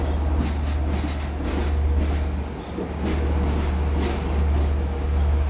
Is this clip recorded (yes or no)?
yes